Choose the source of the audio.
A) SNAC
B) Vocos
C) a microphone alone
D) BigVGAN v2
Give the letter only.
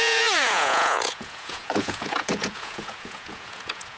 B